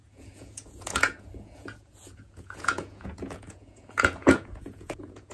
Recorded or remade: remade